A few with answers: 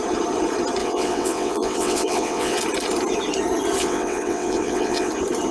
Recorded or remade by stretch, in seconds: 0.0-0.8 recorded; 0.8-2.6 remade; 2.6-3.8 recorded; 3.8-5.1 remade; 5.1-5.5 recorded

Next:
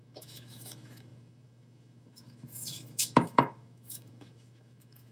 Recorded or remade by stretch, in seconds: 0.0-5.1 remade

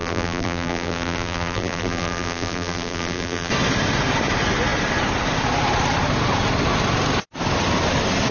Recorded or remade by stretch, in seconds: 0.0-3.5 remade; 3.5-8.3 recorded

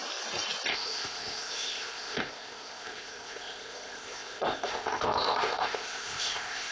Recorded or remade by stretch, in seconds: 0.0-0.7 recorded; 0.7-6.7 remade